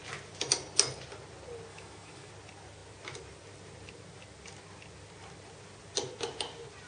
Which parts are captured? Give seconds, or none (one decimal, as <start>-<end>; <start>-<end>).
0.0-1.7; 2.3-6.9